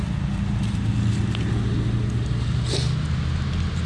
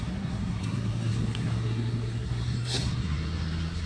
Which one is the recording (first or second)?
first